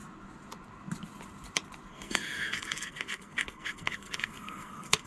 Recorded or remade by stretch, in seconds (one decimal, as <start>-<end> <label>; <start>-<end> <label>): 0.0-1.9 recorded; 1.9-5.1 remade